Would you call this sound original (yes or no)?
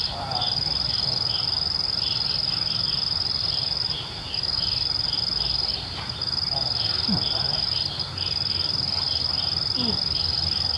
yes